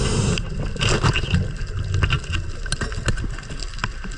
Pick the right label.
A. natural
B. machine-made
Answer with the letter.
A